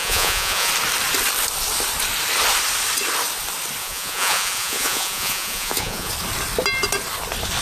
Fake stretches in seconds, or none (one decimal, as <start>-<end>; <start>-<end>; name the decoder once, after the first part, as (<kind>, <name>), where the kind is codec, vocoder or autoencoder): 0.0-0.7 (vocoder, Vocos); 3.8-6.1